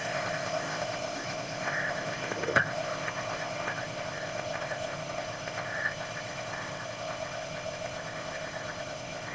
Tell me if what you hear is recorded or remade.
remade